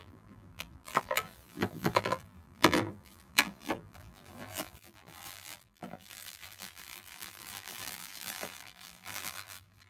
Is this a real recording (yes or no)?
no